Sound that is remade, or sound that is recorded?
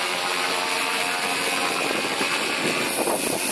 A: remade